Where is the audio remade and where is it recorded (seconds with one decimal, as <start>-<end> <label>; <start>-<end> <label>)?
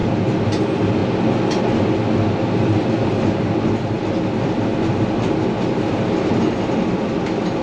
0.0-7.6 recorded